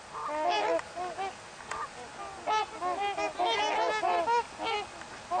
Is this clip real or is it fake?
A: real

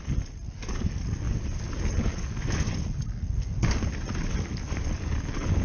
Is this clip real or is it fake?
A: real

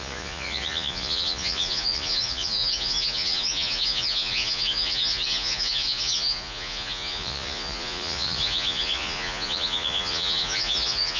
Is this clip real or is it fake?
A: fake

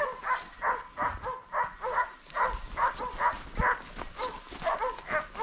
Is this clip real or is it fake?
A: real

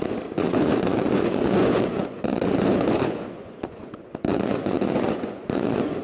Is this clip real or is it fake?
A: fake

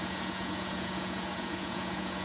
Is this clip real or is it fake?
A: fake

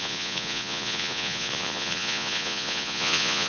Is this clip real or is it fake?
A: fake